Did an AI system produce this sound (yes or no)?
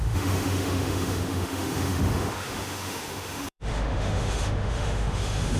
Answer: yes